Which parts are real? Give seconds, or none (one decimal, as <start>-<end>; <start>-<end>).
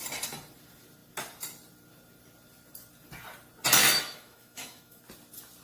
0.0-3.8; 5.0-5.6